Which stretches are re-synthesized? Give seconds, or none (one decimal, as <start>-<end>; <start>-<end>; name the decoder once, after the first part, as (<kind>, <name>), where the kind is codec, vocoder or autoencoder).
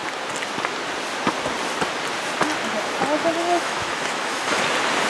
3.4-4.6 (autoencoder, DAC-VAE)